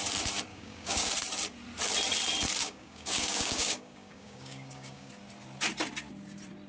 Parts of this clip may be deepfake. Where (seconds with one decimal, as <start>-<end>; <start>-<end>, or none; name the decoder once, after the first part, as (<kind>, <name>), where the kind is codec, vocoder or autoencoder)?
0.5-1.1 (codec, DAC); 2.6-5.1